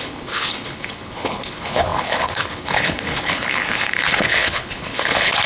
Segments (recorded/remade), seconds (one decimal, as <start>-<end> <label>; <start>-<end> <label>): 0.0-5.5 remade